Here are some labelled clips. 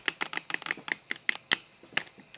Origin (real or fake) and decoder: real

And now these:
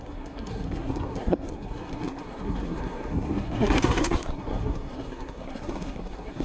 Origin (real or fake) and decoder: fake, codec, SNAC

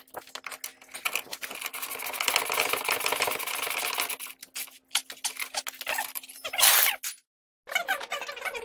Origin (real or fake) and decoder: real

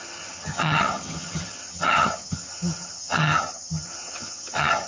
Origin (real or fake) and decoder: fake, vocoder, HiFi-GAN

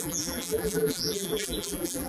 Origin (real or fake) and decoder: fake, vocoder, BigVGAN v2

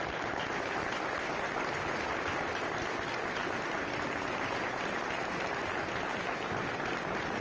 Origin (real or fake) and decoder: real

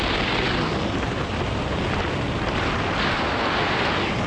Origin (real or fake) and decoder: real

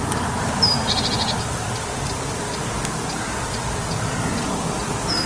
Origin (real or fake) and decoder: real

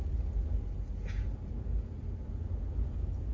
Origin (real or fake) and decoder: real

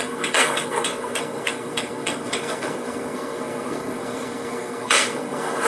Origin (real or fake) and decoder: fake, codec, SNAC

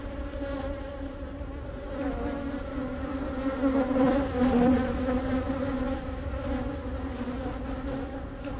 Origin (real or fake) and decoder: real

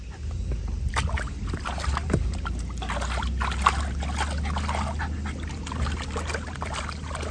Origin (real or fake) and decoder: real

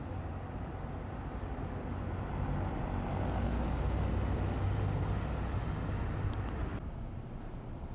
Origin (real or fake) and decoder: real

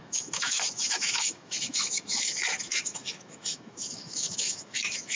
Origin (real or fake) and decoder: fake, autoencoder, DAC-VAE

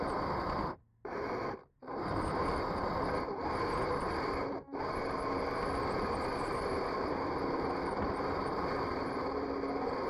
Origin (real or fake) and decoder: real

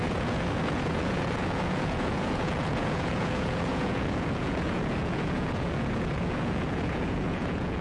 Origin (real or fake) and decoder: fake, vocoder, Vocos